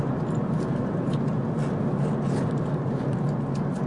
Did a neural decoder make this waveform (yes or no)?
no